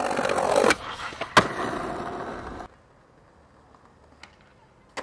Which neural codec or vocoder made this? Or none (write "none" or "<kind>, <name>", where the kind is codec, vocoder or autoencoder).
none